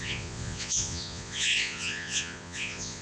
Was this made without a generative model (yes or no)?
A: no